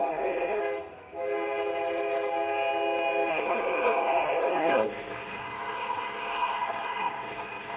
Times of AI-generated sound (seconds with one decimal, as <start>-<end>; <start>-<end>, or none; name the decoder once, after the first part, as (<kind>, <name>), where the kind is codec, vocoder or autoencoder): 0.0-0.6 (codec, SNAC); 3.3-7.8